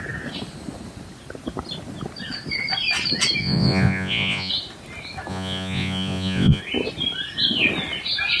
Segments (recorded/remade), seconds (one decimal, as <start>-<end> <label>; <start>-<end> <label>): 0.0-3.4 recorded; 3.4-4.5 remade; 4.5-5.3 recorded; 5.3-6.6 remade; 6.6-8.4 recorded